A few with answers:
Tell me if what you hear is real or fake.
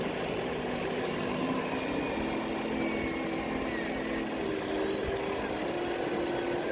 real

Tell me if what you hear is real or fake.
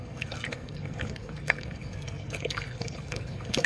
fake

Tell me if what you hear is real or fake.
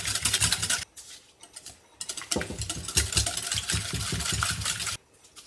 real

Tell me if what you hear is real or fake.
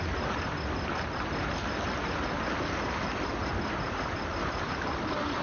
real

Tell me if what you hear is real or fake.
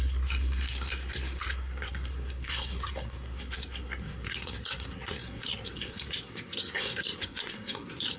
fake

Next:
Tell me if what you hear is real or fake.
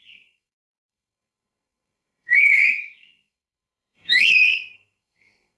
fake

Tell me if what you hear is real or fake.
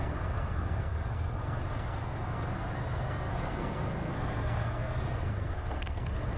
fake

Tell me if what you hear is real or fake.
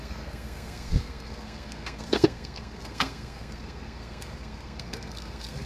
fake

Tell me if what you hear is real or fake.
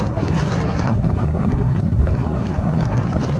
fake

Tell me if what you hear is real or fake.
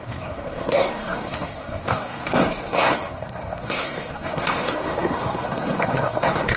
fake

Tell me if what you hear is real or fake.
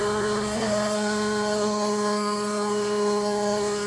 fake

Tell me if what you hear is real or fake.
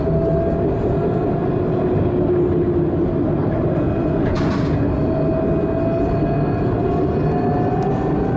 real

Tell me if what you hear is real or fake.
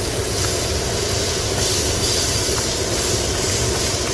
real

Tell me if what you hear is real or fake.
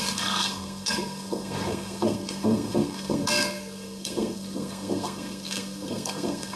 fake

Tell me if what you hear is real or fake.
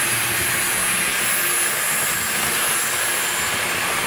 real